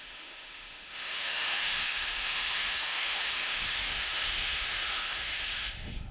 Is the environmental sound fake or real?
fake